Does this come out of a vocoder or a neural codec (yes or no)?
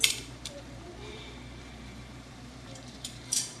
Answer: yes